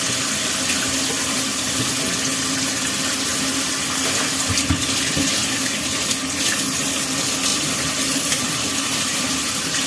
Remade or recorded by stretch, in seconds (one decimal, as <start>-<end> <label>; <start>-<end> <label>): 0.0-7.5 recorded; 7.5-9.4 remade; 9.4-9.9 recorded